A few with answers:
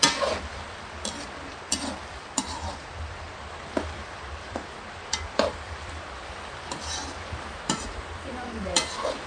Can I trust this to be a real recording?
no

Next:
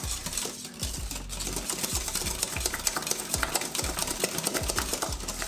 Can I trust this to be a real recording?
yes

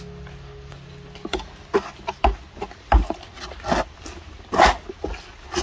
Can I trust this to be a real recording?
yes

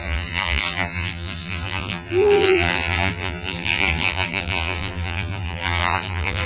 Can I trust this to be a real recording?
no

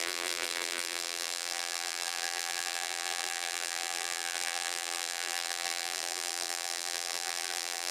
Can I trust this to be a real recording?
no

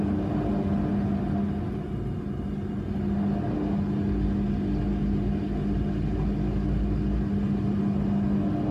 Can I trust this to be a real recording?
yes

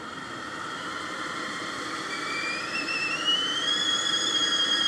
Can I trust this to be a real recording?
no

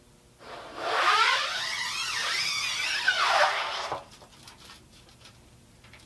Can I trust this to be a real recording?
yes